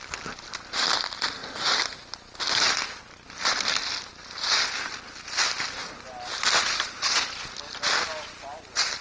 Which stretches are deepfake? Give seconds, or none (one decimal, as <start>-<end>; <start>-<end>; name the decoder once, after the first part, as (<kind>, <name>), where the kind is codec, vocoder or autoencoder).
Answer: none